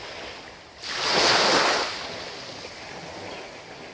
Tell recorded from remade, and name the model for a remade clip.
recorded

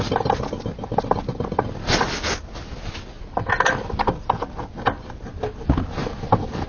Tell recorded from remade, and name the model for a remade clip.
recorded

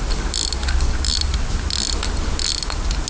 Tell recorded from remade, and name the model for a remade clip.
recorded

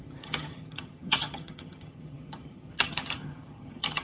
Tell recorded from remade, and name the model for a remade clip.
remade, vocoder, HiFi-GAN